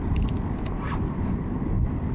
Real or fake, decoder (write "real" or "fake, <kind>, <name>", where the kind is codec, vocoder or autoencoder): real